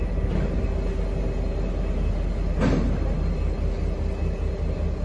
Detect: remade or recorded recorded